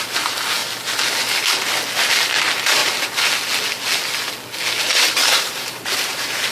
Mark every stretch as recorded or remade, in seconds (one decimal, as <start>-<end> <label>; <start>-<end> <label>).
0.0-0.6 remade; 0.6-2.4 recorded; 2.4-2.8 remade; 2.8-4.8 recorded; 4.8-6.5 remade